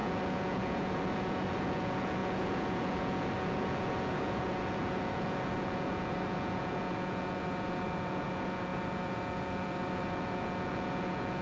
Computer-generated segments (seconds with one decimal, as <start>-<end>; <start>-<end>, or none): 0.0-11.4